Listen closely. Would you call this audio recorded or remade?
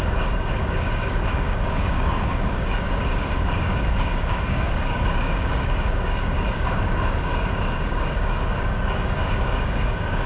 remade